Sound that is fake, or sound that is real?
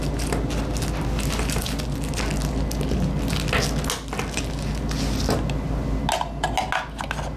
real